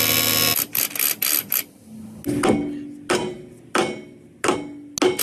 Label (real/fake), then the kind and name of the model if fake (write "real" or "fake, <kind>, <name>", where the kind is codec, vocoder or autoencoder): real